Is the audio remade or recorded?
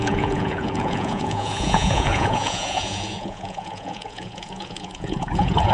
remade